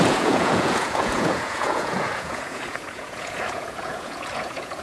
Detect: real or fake fake